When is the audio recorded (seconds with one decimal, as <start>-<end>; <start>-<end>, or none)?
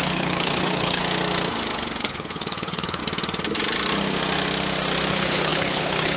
1.0-2.0; 3.0-5.1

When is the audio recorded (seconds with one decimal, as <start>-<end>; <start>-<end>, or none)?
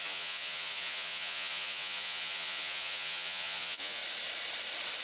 4.0-5.0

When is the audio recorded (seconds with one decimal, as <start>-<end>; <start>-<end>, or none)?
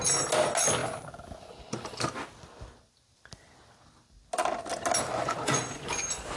0.0-5.1; 6.0-6.4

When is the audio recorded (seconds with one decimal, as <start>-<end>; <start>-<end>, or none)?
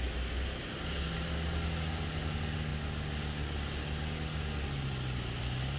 0.0-5.8